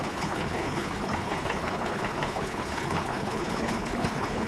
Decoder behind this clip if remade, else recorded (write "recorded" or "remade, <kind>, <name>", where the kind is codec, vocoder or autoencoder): remade, codec, HILCodec